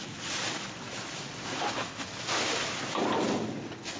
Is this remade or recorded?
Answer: recorded